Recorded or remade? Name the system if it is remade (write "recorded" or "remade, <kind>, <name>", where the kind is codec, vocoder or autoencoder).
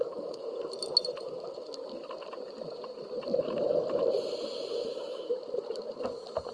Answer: recorded